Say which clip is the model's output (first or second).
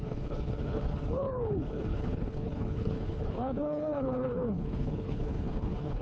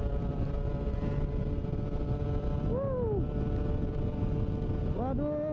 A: first